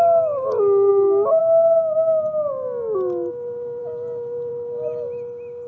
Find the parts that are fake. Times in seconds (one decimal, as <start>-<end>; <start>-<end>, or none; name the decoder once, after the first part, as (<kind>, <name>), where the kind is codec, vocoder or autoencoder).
none